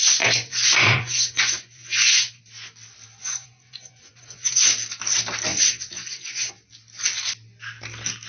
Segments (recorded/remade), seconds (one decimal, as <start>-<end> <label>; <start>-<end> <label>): 0.0-2.4 remade; 2.4-3.2 recorded; 3.2-4.7 remade; 4.7-5.5 recorded; 5.5-6.5 remade; 6.5-8.3 recorded